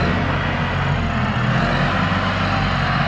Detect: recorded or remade recorded